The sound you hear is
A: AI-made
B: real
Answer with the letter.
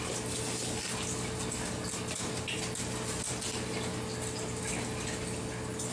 B